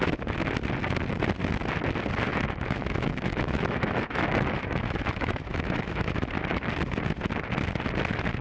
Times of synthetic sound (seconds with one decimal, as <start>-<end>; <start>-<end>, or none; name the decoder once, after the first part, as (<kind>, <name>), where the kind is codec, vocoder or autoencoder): 2.3-6.7 (autoencoder, DAC-VAE)